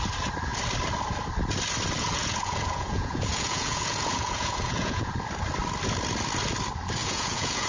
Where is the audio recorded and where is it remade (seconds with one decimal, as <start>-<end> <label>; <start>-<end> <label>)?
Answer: 0.0-2.0 recorded; 2.0-5.1 remade; 5.1-7.0 recorded; 7.0-7.7 remade